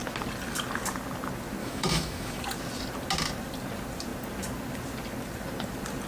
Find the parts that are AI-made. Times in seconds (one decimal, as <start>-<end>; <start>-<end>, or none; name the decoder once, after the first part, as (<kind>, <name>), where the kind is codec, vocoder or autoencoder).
1.6-2.4 (autoencoder, DAC-VAE)